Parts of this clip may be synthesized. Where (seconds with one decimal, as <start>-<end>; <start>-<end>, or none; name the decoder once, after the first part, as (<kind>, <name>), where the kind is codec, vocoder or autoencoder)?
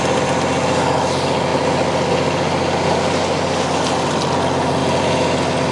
none